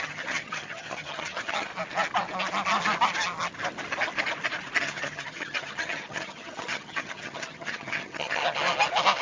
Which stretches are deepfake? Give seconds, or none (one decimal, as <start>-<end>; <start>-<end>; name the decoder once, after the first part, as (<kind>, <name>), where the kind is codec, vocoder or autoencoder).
0.0-1.7 (vocoder, HiFi-GAN); 4.8-8.4